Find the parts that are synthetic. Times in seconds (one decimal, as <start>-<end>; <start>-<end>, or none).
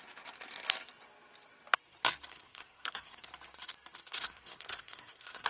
2.3-3.3; 4.1-5.5